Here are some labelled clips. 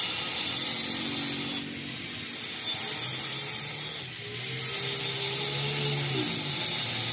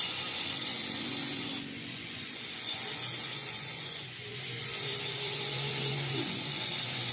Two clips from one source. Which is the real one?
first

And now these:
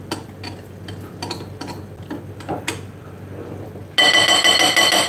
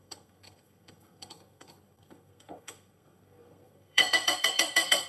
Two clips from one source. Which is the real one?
first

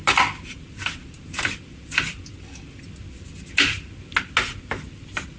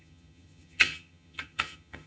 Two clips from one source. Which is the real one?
first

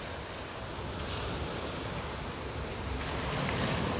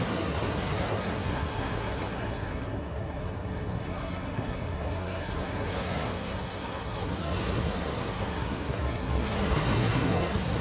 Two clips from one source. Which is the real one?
first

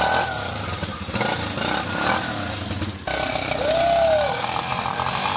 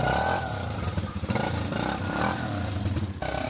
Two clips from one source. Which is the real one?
first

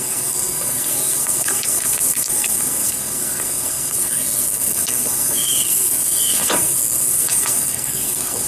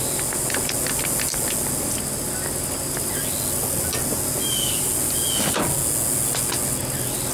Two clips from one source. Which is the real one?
second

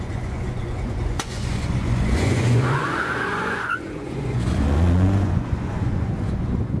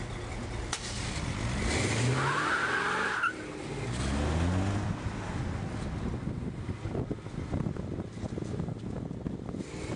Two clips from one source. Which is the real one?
second